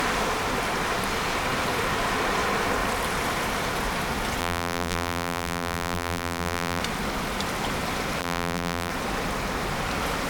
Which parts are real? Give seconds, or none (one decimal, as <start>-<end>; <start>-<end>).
0.0-4.4; 6.8-8.2; 8.9-10.3